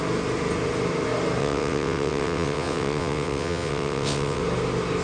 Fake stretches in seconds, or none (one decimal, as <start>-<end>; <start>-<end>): 1.4-4.4